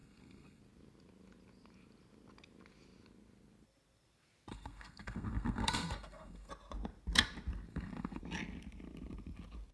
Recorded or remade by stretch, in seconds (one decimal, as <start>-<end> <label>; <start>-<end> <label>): 0.0-0.6 remade; 0.6-4.5 recorded; 4.5-6.5 remade; 6.5-7.7 recorded; 7.7-8.2 remade; 8.2-9.7 recorded